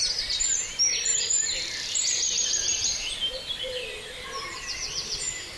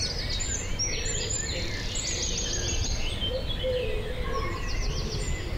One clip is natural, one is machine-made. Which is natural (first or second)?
second